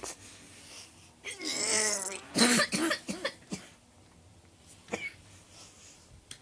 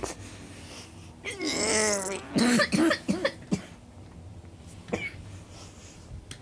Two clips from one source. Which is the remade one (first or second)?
first